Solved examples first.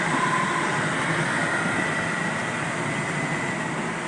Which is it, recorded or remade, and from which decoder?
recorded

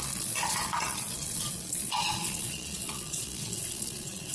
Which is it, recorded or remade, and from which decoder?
remade, vocoder, Vocos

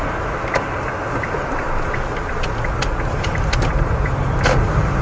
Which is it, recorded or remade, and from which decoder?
recorded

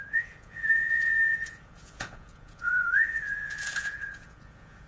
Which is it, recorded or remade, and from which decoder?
remade, vocoder, Vocos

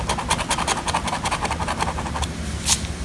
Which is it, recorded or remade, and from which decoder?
recorded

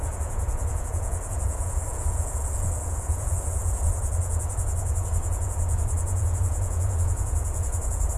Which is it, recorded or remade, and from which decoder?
remade, vocoder, Vocos